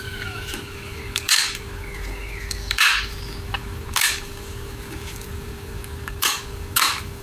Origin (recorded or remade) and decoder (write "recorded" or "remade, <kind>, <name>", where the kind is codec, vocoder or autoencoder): remade, codec, DAC